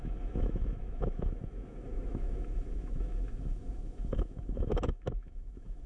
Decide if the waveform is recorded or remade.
remade